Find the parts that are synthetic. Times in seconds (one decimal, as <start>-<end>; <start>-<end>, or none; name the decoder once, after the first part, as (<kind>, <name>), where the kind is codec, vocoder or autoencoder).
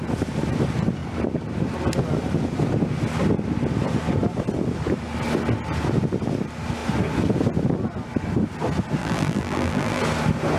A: 9.0-10.0 (vocoder, BigVGAN v2)